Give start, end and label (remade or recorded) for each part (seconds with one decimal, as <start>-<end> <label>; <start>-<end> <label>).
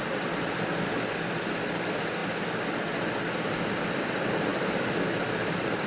0.0-5.9 recorded